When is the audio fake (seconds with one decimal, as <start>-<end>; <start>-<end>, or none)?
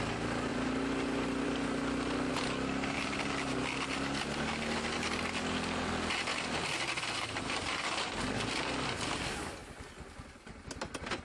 0.5-2.3; 6.3-9.2; 9.6-11.2